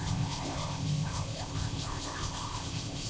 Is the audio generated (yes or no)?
yes